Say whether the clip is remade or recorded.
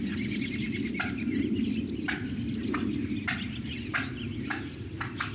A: recorded